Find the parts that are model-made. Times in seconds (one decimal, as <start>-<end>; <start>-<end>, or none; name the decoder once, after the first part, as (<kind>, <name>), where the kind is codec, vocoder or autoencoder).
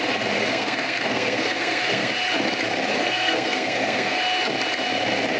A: 0.5-2.1 (codec, SNAC); 3.0-4.2